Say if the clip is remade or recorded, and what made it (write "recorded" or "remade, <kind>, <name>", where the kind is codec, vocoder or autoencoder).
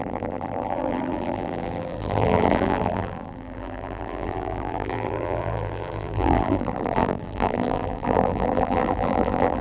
remade, vocoder, BigVGAN v2